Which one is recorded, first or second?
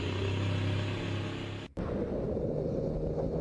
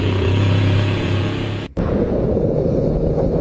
first